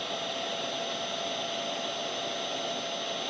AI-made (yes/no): no